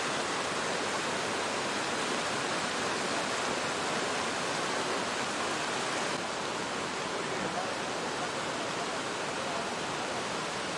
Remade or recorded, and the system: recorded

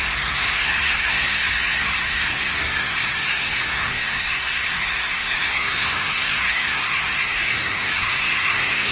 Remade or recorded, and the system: remade, codec, SNAC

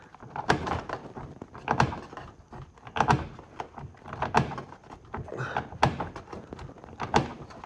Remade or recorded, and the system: recorded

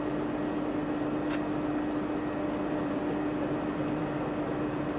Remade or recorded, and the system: recorded